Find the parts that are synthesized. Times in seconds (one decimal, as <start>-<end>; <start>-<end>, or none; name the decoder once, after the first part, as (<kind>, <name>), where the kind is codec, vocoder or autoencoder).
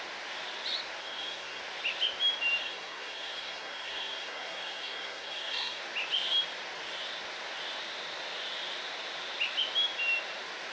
1.0-1.6 (codec, SNAC); 2.6-5.8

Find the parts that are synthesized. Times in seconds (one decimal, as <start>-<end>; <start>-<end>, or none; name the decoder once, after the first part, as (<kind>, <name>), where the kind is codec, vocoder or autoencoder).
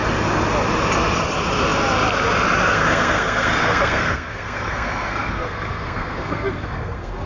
2.7-7.3 (codec, SNAC)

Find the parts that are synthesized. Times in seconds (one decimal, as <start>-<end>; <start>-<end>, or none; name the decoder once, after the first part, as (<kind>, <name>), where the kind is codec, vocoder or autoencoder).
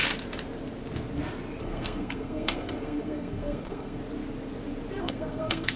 1.6-4.0 (codec, SNAC); 5.0-5.8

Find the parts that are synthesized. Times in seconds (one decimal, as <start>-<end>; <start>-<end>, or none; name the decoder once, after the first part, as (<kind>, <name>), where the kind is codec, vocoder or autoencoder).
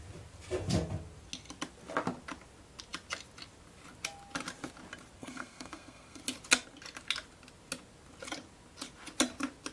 5.2-6.2 (codec, SNAC)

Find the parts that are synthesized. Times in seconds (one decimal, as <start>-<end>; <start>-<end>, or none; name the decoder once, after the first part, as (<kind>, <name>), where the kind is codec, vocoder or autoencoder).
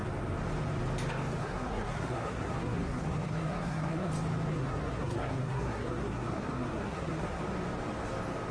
1.4-4.1 (codec, SNAC); 4.5-7.4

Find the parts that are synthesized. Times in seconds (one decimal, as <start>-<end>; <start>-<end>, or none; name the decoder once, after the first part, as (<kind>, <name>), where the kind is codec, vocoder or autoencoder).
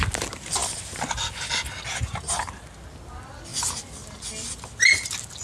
none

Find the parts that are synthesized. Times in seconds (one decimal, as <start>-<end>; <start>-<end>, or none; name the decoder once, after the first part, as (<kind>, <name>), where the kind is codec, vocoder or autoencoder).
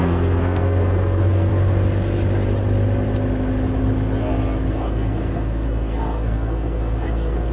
0.0-1.5 (codec, SNAC); 4.7-7.5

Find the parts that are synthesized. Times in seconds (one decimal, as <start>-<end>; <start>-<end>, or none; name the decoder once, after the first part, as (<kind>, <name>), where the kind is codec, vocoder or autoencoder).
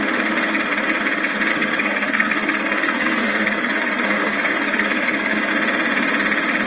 1.5-5.5 (codec, SNAC)